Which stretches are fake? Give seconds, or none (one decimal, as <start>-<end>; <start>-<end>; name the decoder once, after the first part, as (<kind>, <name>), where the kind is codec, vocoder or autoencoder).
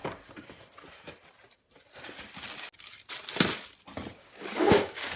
4.2-5.2 (codec, DAC)